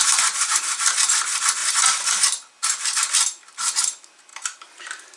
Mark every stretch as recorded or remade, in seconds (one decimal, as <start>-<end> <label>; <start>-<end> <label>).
0.0-5.2 recorded